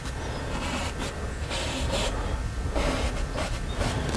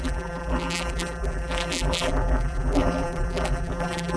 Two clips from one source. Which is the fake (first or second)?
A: second